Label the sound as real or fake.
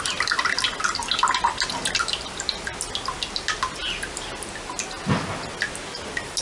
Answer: real